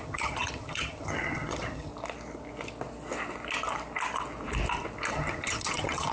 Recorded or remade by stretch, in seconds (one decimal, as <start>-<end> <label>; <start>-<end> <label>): 0.0-1.9 remade; 1.9-5.1 recorded; 5.1-6.1 remade

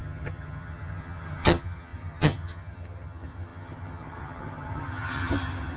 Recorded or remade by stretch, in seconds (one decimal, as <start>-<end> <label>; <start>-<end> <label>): 0.0-5.8 remade

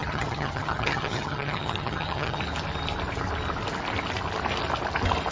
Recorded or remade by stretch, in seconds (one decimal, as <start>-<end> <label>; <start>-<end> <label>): 0.0-2.4 remade; 2.4-5.3 recorded

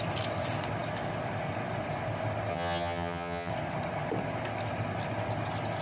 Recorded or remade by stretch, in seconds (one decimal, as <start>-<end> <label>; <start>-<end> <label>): 0.0-2.5 recorded; 2.5-3.5 remade; 3.5-5.8 recorded

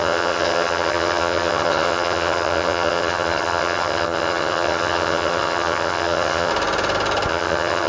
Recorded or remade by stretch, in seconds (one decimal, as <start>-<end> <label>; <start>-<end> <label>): 0.0-6.5 remade; 6.5-7.3 recorded; 7.3-7.9 remade